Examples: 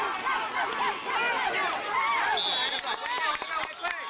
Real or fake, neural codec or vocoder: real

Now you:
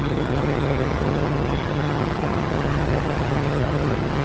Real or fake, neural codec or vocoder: fake, vocoder, HiFi-GAN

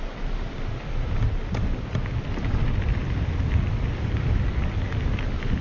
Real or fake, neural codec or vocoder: real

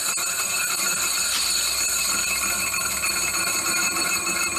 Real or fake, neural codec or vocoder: real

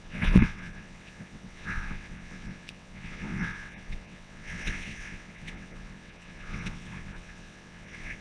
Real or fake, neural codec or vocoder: fake, vocoder, WaveNeXt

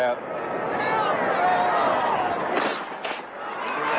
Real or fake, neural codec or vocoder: real